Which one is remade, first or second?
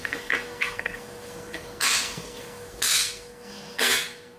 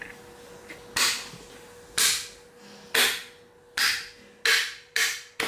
first